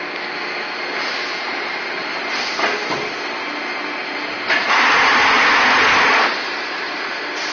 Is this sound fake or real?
real